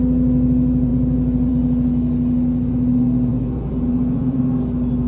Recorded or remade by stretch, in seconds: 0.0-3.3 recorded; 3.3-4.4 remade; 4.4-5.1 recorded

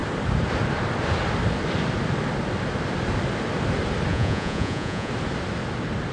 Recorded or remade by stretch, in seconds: 0.0-4.1 recorded; 4.1-5.1 remade; 5.1-6.1 recorded